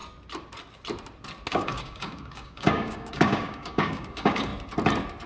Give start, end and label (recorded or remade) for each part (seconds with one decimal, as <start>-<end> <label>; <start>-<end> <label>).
0.0-1.5 recorded; 1.5-4.5 remade; 4.5-5.3 recorded